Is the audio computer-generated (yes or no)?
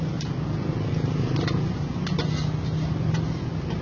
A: no